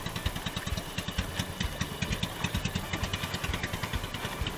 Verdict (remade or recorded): recorded